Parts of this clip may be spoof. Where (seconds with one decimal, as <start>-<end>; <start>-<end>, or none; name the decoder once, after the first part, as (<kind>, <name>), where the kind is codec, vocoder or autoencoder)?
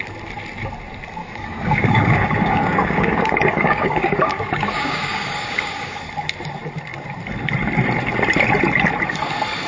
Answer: 1.2-6.0 (codec, DAC)